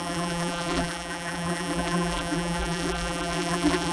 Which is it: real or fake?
fake